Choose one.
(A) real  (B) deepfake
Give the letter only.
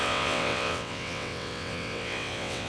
B